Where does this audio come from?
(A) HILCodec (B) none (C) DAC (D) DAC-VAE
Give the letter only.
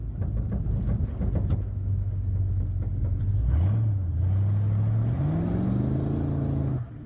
B